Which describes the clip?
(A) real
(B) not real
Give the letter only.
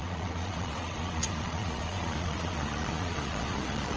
B